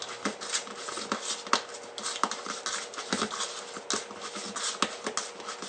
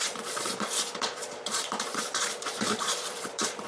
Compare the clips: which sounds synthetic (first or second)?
second